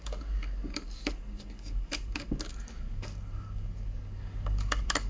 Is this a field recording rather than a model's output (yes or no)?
no